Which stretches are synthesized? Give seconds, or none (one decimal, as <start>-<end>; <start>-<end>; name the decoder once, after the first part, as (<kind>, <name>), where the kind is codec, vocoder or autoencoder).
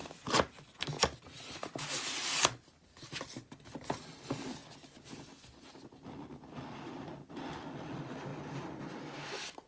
none